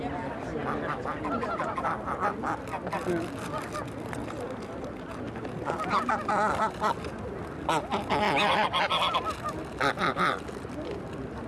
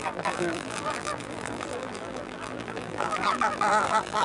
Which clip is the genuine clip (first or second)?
first